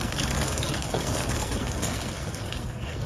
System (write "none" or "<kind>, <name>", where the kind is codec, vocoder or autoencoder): codec, SNAC